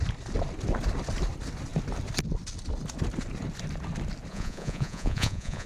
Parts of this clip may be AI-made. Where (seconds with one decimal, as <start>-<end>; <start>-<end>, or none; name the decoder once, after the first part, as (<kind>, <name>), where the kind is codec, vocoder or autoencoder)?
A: 4.3-5.7 (vocoder, Vocos)